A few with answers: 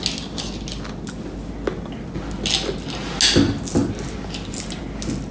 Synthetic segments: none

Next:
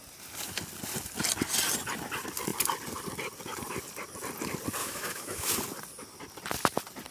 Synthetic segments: 4.8-5.5 (autoencoder, DAC-VAE)

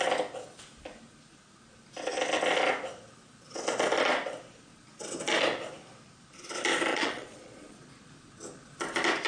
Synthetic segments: 6.9-8.1 (vocoder, Vocos)

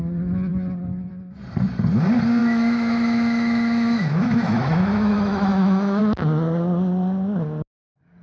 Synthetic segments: 2.4-6.0 (autoencoder, DAC-VAE)

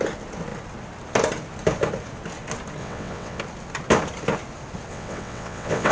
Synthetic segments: 2.8-3.4 (vocoder, WaveNeXt); 4.9-5.9

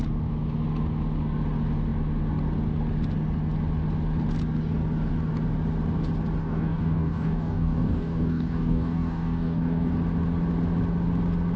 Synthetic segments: 6.4-9.9 (codec, DAC)

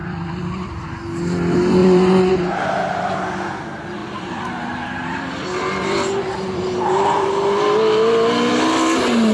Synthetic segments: 0.0-0.8 (vocoder, BigVGAN v2); 1.8-2.3; 4.0-7.3